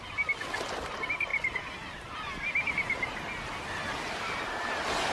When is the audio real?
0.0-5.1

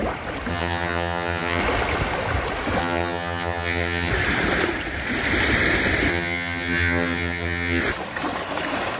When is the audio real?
0.0-0.5; 1.6-2.8; 4.1-6.1; 7.8-9.0

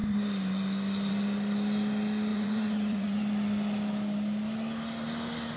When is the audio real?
0.0-2.3; 3.2-5.6

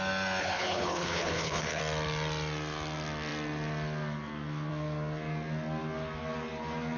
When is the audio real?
0.0-0.4; 1.8-7.0

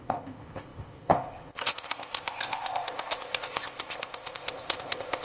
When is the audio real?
none

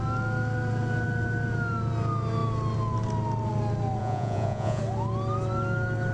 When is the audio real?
0.0-4.0; 4.8-6.1

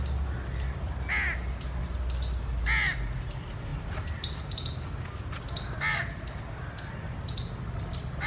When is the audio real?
0.0-8.3